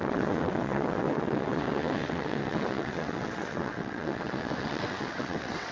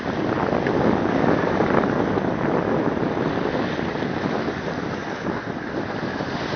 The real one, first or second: second